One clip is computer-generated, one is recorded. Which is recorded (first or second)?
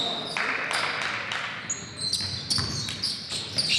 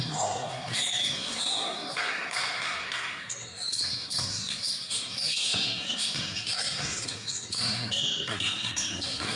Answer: first